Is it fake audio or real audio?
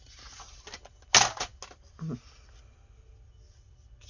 real